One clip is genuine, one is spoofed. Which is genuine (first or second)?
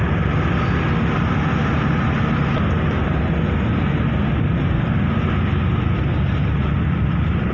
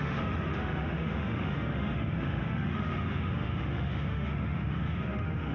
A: first